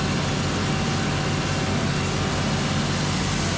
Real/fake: real